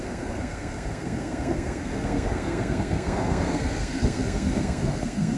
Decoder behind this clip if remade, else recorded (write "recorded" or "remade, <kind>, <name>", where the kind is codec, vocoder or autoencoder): remade, codec, SNAC